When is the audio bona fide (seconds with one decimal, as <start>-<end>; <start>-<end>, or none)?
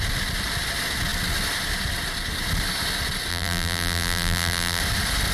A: 0.0-3.3; 4.8-5.3